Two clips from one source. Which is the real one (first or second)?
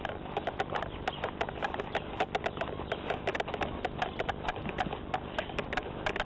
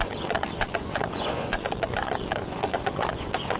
first